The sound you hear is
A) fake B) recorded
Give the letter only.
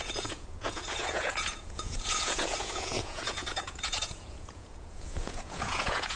A